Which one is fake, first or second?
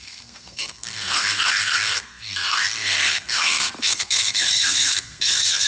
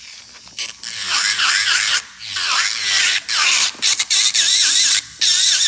first